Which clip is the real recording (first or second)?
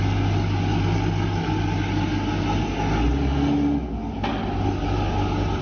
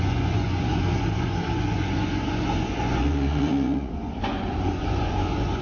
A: first